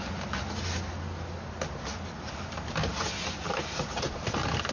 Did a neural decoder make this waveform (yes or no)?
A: no